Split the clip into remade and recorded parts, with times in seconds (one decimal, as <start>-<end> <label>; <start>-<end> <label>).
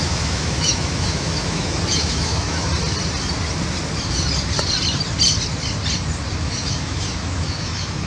0.0-2.7 remade; 2.7-6.4 recorded; 6.4-8.1 remade